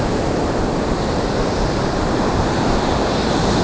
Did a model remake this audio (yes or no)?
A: no